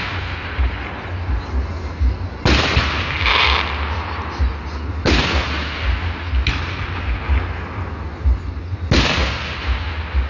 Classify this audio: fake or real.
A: real